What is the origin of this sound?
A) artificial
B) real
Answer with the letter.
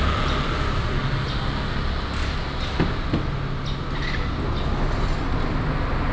B